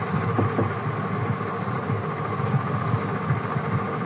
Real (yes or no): yes